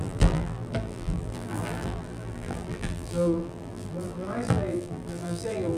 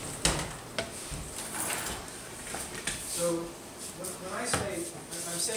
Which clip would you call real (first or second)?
second